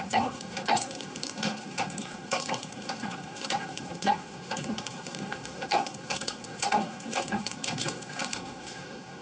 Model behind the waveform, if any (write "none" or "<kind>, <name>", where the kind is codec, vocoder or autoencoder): codec, SNAC